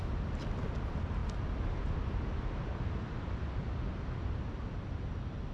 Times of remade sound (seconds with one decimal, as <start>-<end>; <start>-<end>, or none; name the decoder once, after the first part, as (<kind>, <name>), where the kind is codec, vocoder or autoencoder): none